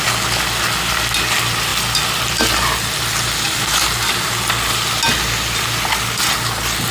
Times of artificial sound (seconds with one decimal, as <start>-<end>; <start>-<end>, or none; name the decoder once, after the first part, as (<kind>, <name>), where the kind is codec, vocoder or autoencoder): none

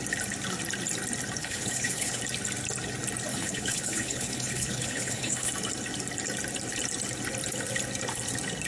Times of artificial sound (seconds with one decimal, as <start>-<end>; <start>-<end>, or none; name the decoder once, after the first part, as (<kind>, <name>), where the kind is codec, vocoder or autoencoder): 1.4-2.2 (codec, HILCodec); 3.3-5.5